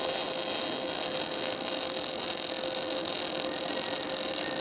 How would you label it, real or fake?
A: real